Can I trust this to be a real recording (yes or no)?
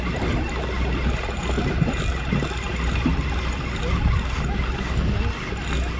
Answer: yes